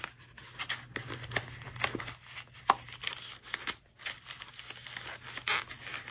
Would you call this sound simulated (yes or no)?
no